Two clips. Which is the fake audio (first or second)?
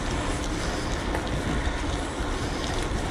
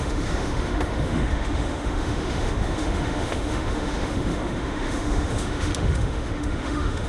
second